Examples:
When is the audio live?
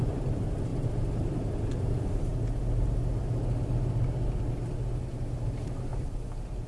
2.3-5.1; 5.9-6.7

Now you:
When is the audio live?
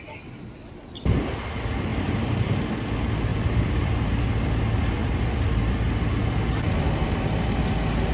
0.0-1.9; 2.6-3.3; 4.2-5.0; 5.7-8.1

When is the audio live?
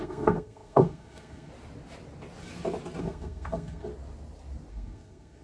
1.5-3.0; 3.9-4.7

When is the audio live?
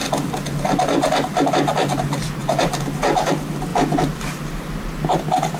0.0-1.5; 2.4-3.3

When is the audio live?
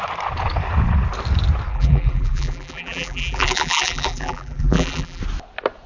0.0-1.7; 5.2-5.9